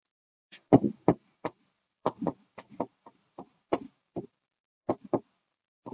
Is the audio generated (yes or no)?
yes